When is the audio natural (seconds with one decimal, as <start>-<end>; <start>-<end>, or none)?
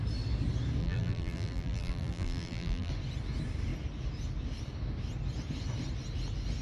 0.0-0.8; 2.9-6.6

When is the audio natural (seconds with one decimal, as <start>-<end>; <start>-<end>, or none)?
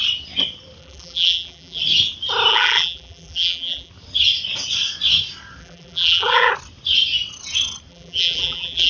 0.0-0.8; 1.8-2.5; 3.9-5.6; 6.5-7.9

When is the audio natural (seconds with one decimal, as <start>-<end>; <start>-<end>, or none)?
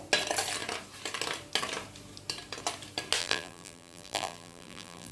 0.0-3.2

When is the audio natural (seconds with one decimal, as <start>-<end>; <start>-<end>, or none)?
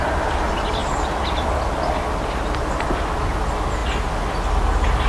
0.0-5.1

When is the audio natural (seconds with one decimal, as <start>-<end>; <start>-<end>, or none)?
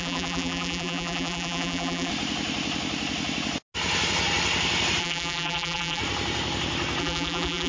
2.1-5.0; 6.0-7.0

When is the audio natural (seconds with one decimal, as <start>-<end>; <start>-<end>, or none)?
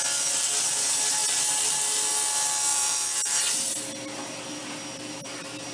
0.0-2.7; 3.4-5.7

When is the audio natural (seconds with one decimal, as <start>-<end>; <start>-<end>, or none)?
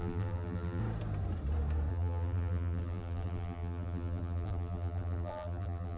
0.8-1.9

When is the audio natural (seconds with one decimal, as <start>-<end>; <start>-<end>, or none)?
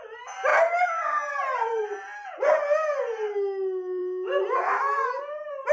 0.0-4.0; 4.7-5.7